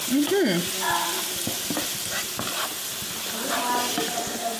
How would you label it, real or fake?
real